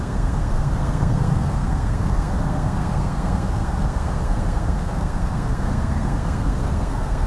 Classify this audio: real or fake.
fake